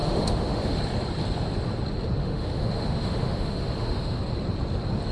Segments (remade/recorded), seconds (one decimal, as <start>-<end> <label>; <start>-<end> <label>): 0.0-0.8 remade; 0.8-2.2 recorded; 2.2-4.2 remade; 4.2-5.1 recorded